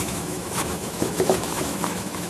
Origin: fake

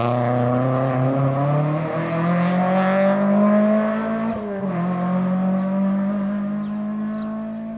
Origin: real